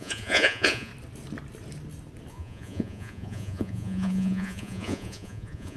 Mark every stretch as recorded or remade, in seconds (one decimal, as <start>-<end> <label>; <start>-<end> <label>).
0.0-0.9 remade; 0.9-2.3 recorded; 2.3-5.8 remade